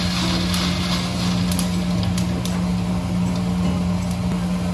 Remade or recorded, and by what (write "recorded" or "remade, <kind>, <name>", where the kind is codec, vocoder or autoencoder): recorded